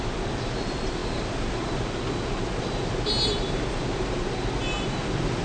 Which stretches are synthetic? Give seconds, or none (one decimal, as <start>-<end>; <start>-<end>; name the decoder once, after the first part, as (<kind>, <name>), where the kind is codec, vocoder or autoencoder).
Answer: none